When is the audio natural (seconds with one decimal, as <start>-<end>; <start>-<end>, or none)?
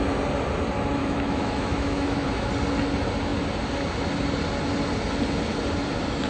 0.0-1.0; 2.5-6.3